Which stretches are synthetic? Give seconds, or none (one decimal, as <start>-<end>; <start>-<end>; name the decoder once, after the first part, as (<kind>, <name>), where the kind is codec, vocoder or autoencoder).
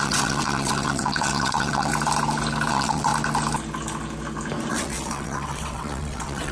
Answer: 0.0-1.9 (vocoder, WaveNeXt); 2.7-3.1; 4.7-6.5